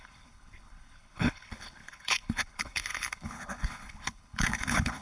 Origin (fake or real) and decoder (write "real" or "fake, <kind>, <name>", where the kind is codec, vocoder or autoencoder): fake, codec, HILCodec